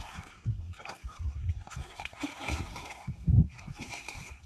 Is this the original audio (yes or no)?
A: no